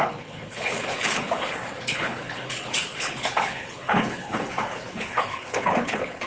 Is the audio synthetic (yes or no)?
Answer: yes